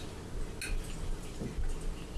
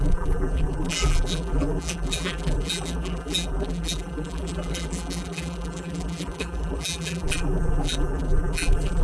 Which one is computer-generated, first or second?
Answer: second